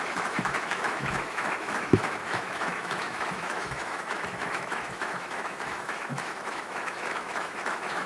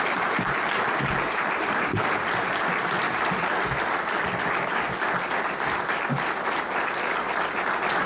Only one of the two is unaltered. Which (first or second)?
second